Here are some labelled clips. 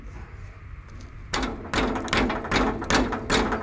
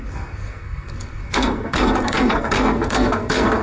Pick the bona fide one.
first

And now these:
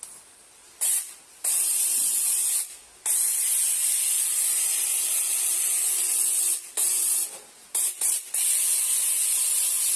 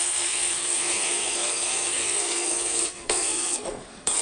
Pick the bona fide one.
first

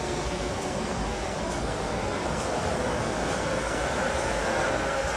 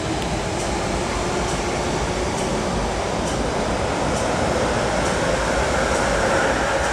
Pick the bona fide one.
second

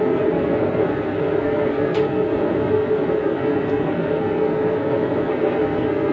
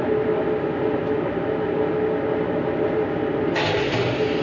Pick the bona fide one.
second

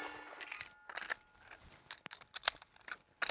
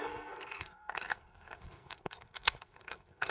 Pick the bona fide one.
first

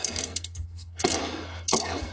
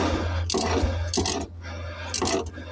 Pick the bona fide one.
second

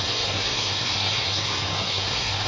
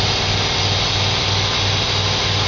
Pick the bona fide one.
second